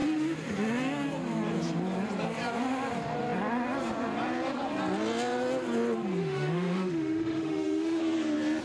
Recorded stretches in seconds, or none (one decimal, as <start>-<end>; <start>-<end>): 0.0-6.2; 8.0-8.6